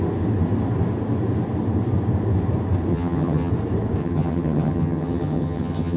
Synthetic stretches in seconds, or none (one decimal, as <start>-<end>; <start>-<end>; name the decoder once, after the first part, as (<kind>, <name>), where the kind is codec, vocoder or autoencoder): 2.9-3.5 (vocoder, HiFi-GAN); 4.0-6.0